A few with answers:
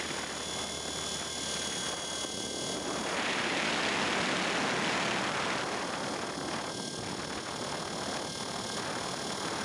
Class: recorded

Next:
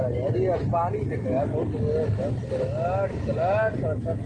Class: recorded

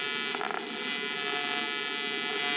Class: recorded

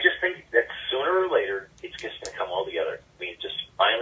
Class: recorded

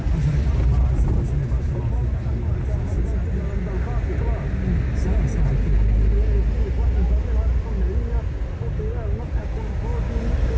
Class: recorded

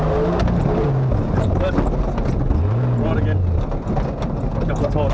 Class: recorded